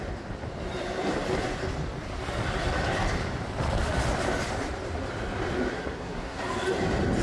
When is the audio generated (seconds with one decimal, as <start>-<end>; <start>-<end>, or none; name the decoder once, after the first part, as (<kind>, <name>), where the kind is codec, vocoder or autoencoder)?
5.7-6.4 (codec, SNAC)